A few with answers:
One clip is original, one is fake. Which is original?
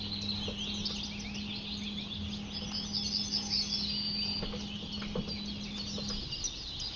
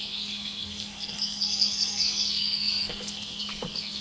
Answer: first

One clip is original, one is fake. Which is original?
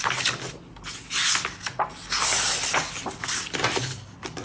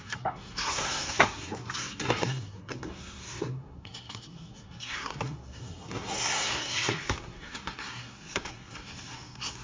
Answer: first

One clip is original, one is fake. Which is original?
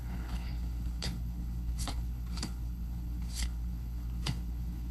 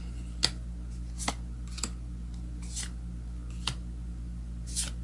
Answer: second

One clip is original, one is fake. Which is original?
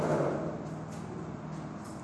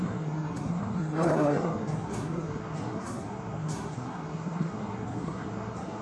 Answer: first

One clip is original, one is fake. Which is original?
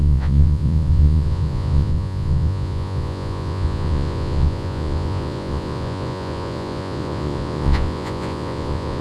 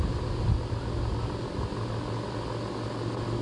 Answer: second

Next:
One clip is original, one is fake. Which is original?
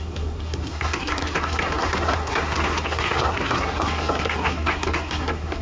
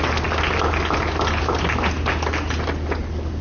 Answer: second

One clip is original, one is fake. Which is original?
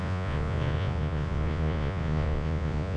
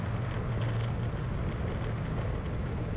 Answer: second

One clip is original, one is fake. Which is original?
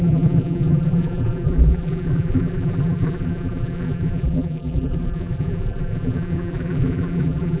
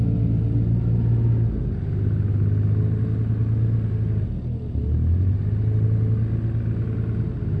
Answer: second